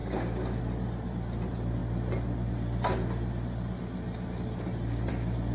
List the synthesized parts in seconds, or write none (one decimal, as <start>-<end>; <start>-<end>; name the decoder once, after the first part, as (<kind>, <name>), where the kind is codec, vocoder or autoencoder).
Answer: 0.0-0.6 (codec, DAC)